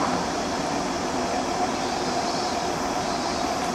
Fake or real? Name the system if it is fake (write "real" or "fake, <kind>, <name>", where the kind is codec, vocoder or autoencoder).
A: fake, vocoder, BigVGAN v2